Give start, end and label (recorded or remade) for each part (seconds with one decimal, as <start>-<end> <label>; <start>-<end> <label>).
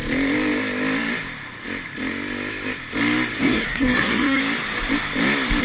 0.0-3.4 recorded; 3.4-4.4 remade; 4.4-5.6 recorded